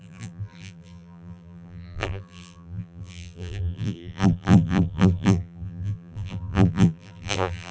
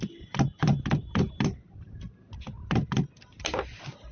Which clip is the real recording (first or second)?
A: second